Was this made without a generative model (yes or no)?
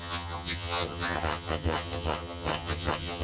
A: no